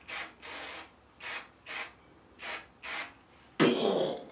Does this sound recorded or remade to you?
recorded